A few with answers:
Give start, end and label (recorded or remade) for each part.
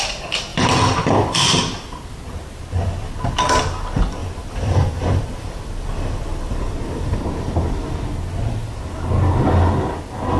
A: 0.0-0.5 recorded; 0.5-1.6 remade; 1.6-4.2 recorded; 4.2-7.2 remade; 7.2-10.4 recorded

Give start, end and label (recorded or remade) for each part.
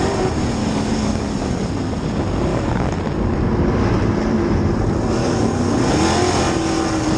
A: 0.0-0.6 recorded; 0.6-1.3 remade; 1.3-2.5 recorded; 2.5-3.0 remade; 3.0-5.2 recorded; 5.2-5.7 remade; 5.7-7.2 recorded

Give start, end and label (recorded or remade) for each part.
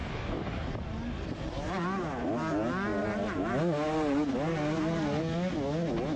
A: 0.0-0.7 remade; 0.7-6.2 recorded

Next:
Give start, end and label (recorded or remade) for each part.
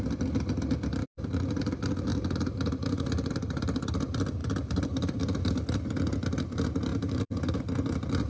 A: 0.0-2.1 recorded; 2.1-3.3 remade; 3.3-4.4 recorded; 4.4-5.5 remade; 5.5-6.9 recorded; 6.9-7.6 remade; 7.6-8.3 recorded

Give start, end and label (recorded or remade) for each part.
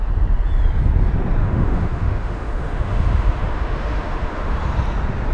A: 0.0-1.4 recorded; 1.4-4.6 remade; 4.6-5.3 recorded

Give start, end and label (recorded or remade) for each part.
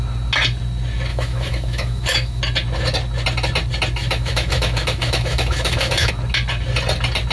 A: 0.0-1.1 recorded; 1.1-2.4 remade; 2.4-4.0 recorded; 4.0-6.1 remade; 6.1-7.3 recorded